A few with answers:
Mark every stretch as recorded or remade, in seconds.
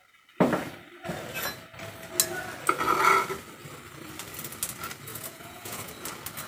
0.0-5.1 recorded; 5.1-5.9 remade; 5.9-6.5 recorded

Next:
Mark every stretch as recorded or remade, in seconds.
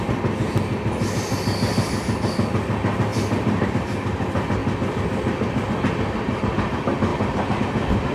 0.0-8.1 recorded